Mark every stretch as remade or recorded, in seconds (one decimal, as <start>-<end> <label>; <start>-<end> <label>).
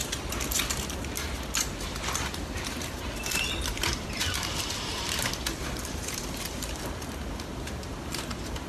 0.0-3.9 recorded; 3.9-6.8 remade; 6.8-8.7 recorded